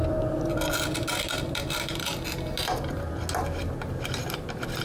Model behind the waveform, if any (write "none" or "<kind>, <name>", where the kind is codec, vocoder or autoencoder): none